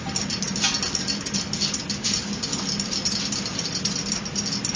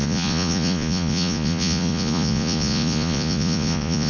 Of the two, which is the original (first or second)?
first